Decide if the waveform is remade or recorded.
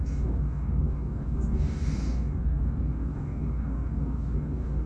remade